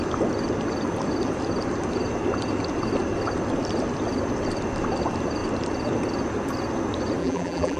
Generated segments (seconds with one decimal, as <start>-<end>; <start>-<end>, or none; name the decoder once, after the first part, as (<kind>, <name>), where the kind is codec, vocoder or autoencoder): 7.2-7.8 (vocoder, BigVGAN v2)